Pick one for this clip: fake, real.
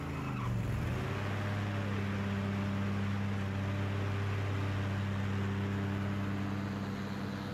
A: real